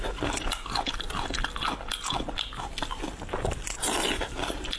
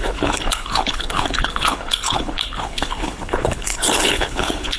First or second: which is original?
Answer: first